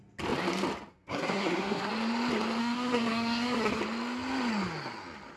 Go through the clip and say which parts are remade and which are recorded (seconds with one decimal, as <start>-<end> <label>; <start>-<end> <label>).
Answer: 0.0-0.9 recorded; 0.9-1.9 remade; 1.9-2.6 recorded; 2.6-3.8 remade; 3.8-5.4 recorded